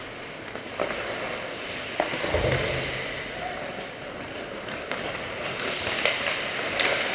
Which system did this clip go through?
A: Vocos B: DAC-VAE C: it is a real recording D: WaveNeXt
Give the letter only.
C